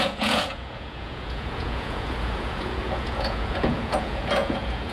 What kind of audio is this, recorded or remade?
remade